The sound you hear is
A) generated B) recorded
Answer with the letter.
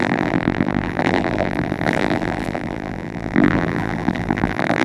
A